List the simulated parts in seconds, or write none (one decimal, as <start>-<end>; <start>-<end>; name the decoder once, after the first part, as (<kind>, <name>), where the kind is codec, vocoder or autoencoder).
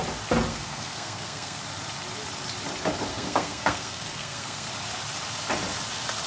0.5-1.6 (codec, SNAC); 3.1-4.7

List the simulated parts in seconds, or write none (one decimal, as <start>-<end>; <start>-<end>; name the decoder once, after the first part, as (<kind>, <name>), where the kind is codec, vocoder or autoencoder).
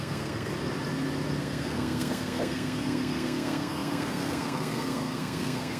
0.0-0.5 (codec, SNAC); 1.4-5.8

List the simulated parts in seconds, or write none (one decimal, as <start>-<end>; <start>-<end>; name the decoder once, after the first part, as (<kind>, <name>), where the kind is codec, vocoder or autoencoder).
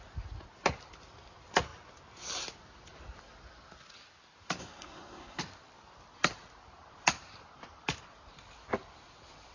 4.6-5.4 (codec, SNAC)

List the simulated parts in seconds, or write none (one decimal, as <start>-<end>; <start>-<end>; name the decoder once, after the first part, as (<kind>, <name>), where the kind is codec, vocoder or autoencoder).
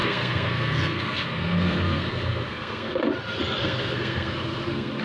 0.0-3.0 (codec, SNAC); 3.6-5.0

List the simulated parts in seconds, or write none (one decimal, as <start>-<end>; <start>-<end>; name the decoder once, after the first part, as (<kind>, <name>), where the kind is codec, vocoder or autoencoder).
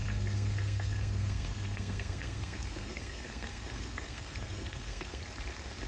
0.0-5.2 (codec, SNAC)